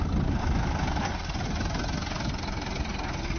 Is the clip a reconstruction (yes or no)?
no